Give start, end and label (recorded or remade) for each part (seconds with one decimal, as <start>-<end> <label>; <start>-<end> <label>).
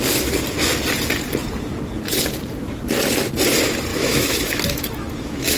0.0-3.9 recorded; 3.9-5.6 remade